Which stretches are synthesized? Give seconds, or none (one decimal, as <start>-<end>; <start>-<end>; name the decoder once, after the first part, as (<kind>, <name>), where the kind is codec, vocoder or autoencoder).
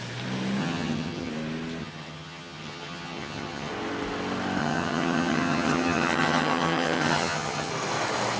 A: 0.6-1.3 (vocoder, HiFi-GAN); 1.8-3.7; 4.6-7.7